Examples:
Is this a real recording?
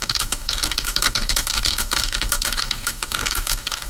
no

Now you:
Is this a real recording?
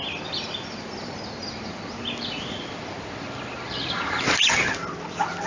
yes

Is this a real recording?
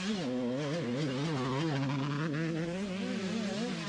yes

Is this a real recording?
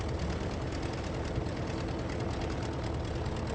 yes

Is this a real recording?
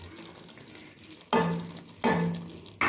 yes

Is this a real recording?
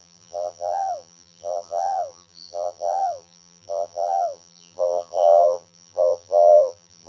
no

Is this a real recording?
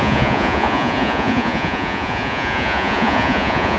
no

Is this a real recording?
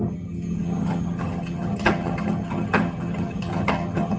no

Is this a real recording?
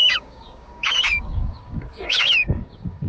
no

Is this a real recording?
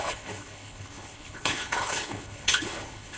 no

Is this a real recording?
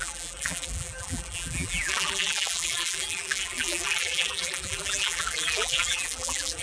no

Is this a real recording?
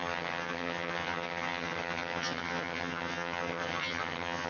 no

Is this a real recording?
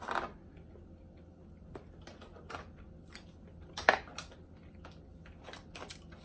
yes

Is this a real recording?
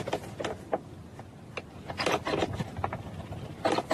yes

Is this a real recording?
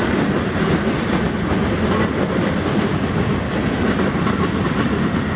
yes